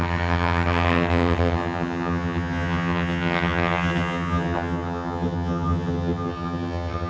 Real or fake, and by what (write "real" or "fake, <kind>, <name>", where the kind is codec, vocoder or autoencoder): fake, vocoder, HiFi-GAN